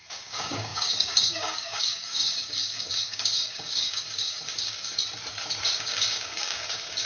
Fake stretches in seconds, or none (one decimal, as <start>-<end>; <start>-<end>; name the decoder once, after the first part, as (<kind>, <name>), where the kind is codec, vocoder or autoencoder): 0.0-5.0 (codec, DAC); 5.8-7.1